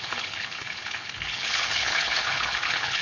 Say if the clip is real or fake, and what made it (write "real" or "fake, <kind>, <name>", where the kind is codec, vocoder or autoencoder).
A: fake, codec, HILCodec